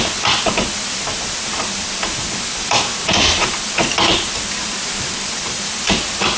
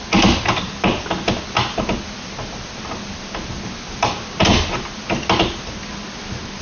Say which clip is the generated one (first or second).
first